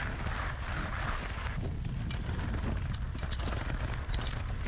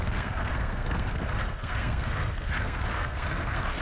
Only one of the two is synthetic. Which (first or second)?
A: second